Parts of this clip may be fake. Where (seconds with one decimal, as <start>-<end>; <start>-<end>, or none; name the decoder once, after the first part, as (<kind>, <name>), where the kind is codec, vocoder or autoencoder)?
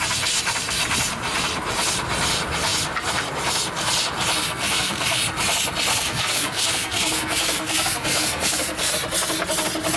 4.4-5.2 (codec, SNAC); 5.9-8.9